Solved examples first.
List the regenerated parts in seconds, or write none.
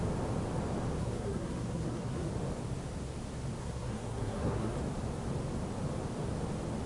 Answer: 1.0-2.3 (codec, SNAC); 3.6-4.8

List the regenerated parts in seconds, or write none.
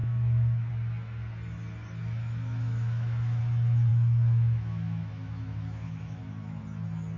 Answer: 0.0-0.7 (autoencoder, DAC-VAE); 2.0-3.4; 3.9-6.6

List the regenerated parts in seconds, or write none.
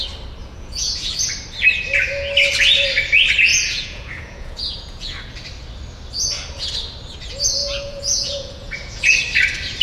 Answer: 0.4-1.1 (vocoder, Vocos); 3.5-5.3; 7.6-9.2